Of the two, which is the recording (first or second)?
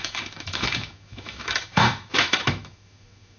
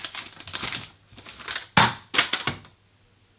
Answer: second